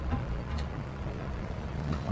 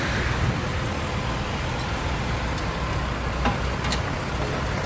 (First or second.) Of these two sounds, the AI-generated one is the first